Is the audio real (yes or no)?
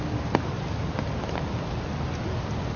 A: yes